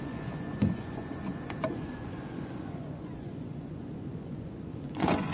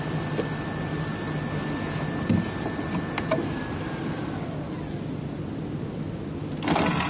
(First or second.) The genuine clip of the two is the second